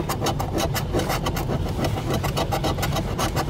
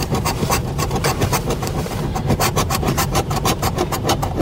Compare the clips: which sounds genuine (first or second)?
first